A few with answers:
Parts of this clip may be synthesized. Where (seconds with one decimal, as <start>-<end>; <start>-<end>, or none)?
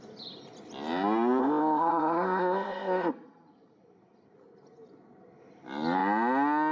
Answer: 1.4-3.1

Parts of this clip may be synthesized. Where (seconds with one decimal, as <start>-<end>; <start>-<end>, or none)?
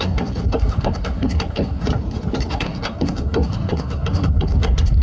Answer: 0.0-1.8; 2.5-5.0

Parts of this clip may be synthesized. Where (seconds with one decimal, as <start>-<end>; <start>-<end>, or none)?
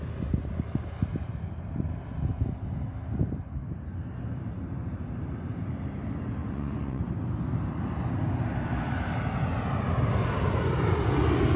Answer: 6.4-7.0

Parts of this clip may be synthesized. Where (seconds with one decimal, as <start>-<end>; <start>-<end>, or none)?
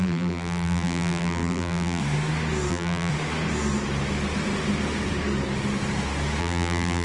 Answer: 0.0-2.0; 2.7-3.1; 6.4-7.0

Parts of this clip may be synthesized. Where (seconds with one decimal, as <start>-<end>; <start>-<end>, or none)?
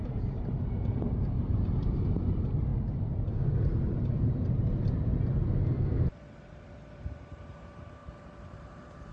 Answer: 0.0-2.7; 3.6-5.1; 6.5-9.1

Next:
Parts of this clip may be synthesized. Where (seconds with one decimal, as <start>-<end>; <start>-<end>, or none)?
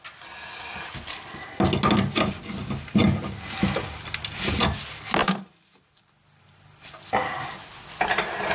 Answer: none